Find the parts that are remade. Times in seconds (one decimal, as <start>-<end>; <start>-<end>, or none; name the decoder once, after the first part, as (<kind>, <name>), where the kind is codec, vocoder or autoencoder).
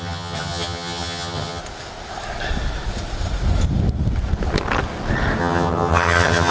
0.0-1.6 (vocoder, HiFi-GAN); 5.4-6.5